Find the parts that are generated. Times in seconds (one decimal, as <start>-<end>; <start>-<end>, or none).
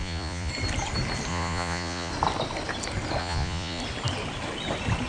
0.0-0.5; 1.3-2.1; 3.2-3.8